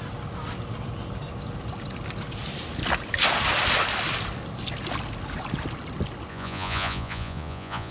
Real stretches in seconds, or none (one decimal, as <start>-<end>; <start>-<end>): 0.0-6.3